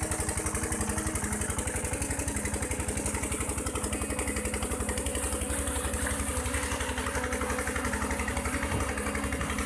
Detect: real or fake real